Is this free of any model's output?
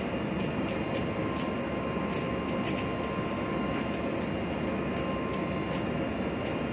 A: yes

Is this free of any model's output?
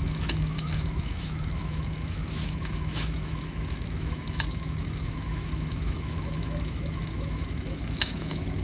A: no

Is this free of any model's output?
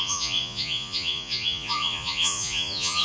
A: no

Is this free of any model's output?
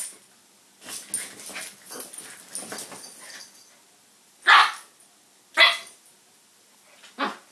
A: yes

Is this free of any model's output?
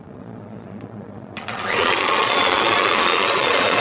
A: no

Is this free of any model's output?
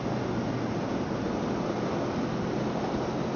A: yes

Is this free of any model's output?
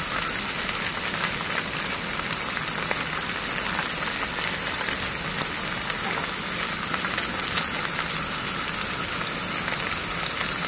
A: yes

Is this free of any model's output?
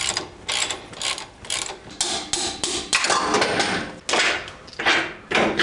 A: yes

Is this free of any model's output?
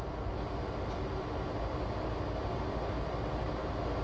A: yes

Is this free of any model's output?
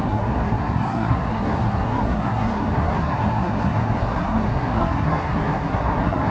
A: no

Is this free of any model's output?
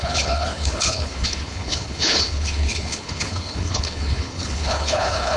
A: no